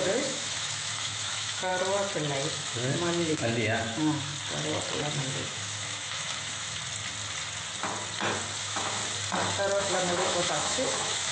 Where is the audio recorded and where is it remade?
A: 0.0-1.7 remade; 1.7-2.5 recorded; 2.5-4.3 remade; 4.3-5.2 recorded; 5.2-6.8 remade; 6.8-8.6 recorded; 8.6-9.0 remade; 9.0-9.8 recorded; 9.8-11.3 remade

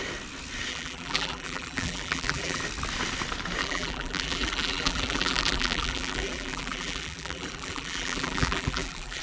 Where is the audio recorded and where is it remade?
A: 0.0-0.7 recorded; 0.7-2.6 remade; 2.6-3.6 recorded; 3.6-9.2 remade

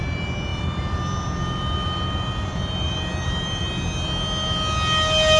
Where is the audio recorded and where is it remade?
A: 0.0-0.5 recorded; 0.5-3.7 remade; 3.7-5.4 recorded

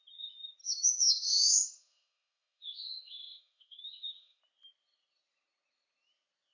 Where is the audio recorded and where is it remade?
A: 0.0-0.6 recorded; 0.6-4.4 remade; 4.4-6.5 recorded

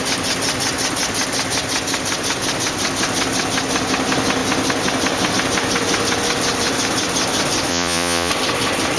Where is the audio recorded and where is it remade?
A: 0.0-7.7 recorded; 7.7-8.3 remade; 8.3-9.0 recorded